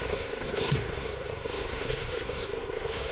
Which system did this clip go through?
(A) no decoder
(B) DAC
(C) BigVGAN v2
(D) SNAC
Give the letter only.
D